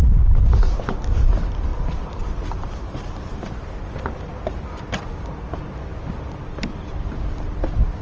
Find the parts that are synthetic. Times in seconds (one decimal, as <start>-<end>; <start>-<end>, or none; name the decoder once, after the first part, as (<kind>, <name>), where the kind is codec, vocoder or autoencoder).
none

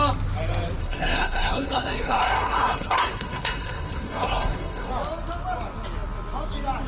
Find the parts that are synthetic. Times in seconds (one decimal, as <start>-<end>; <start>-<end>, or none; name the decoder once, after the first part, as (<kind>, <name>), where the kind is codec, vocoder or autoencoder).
0.8-4.9 (codec, SNAC)

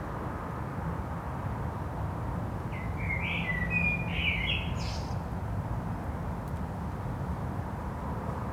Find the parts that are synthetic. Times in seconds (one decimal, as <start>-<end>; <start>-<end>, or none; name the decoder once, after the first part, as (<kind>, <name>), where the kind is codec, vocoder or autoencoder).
none

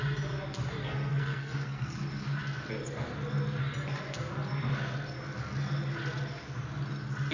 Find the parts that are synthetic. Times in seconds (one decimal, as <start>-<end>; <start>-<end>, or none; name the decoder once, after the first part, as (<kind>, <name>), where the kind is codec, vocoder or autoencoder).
0.8-2.0 (codec, SNAC)

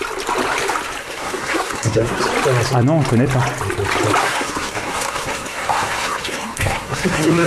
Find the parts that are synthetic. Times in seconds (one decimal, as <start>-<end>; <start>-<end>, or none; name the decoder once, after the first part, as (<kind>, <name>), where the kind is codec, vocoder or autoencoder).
1.0-2.2 (codec, SNAC); 4.2-7.5

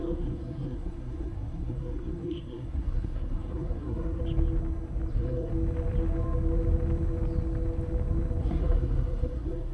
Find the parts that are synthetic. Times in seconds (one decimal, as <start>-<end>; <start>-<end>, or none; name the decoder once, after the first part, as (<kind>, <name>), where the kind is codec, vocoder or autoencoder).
0.0-4.2 (codec, SNAC); 5.1-5.5; 8.4-9.7